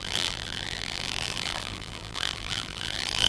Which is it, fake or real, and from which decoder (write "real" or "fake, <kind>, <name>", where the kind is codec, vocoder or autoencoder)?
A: fake, vocoder, BigVGAN v2